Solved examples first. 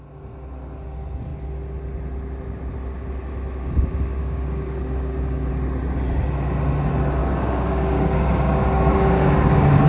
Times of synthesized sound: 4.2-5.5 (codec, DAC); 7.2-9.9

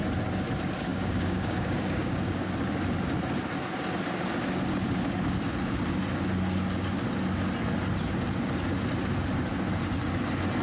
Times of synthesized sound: 0.9-2.5 (codec, DAC)